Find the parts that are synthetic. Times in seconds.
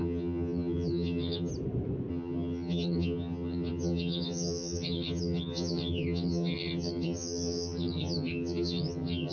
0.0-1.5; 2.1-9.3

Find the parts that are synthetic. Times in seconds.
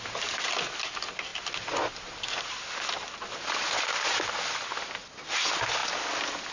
none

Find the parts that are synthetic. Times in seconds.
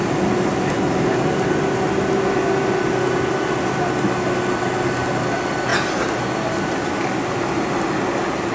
none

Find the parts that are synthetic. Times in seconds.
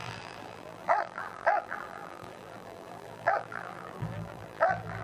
0.0-5.0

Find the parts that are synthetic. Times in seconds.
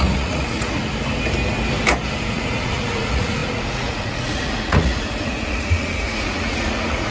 0.0-0.8; 2.3-7.1